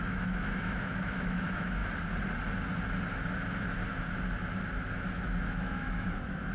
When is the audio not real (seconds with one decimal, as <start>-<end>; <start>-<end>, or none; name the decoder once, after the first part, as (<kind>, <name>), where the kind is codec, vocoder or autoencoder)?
0.0-1.8 (autoencoder, DAC-VAE); 4.8-6.5